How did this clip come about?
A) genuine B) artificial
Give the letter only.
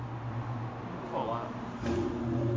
A